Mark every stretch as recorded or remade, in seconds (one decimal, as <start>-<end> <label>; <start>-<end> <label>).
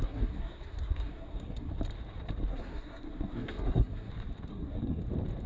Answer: 0.0-1.7 remade; 1.7-2.5 recorded; 2.5-4.1 remade; 4.1-4.5 recorded; 4.5-5.0 remade; 5.0-5.5 recorded